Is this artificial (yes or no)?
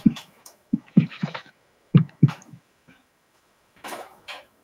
yes